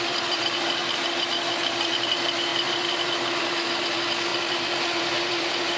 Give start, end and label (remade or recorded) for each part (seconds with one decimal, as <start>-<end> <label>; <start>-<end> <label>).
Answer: 0.0-5.8 remade